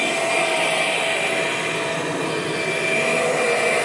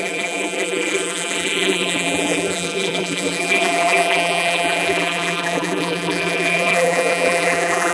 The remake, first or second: second